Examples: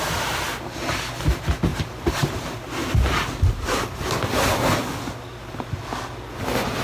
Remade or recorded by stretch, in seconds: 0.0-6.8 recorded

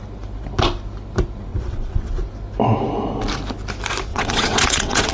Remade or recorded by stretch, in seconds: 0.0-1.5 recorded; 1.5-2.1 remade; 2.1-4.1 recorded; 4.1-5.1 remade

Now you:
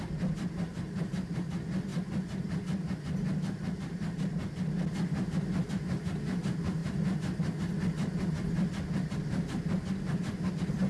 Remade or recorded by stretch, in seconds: 0.0-0.7 recorded; 0.7-1.5 remade; 1.5-10.9 recorded

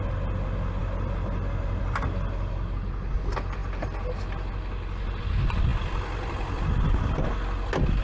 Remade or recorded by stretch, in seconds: 0.0-8.0 recorded

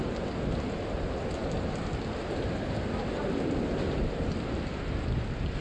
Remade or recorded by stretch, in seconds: 0.0-5.6 recorded

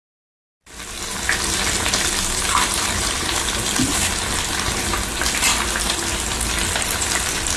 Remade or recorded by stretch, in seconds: 0.0-7.6 recorded

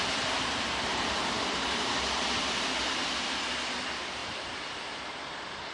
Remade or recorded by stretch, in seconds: 0.0-5.7 recorded